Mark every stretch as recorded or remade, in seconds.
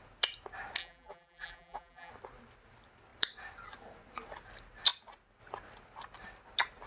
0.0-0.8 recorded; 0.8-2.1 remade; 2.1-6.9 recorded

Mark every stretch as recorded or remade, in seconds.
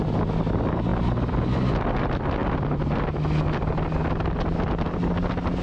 0.0-5.6 recorded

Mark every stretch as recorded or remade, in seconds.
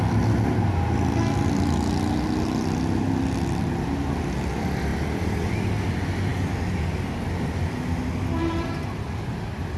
0.0-9.8 recorded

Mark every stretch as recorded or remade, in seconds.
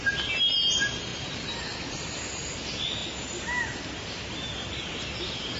0.0-1.1 recorded; 1.1-2.1 remade; 2.1-5.6 recorded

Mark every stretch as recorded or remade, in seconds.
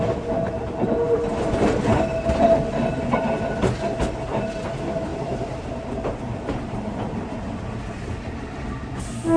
0.0-5.1 recorded; 5.1-8.1 remade; 8.1-9.4 recorded